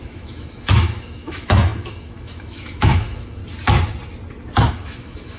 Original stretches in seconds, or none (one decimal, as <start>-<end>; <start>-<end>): 3.4-4.7